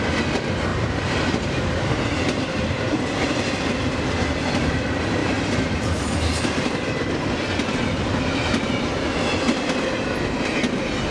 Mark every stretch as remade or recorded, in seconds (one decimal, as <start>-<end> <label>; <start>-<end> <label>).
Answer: 0.0-0.7 recorded; 0.7-3.0 remade; 3.0-5.2 recorded; 5.2-6.4 remade; 6.4-11.1 recorded